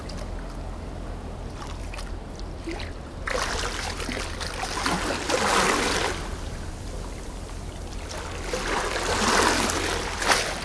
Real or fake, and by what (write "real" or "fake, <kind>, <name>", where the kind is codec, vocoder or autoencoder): real